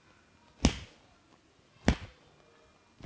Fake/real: real